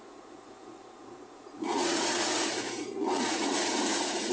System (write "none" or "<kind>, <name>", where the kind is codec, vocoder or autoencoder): vocoder, Vocos